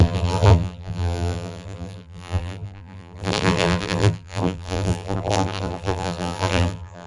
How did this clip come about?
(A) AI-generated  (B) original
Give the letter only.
A